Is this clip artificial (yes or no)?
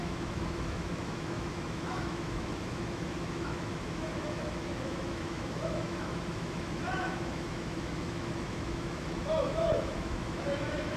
yes